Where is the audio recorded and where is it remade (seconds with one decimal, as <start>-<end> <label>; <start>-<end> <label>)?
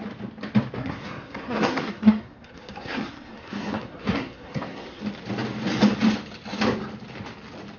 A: 0.0-0.8 recorded; 0.8-5.0 remade; 5.0-7.8 recorded